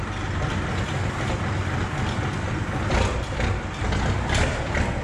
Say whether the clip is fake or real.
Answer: real